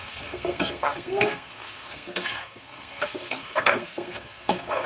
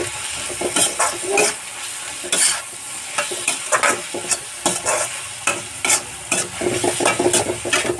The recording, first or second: second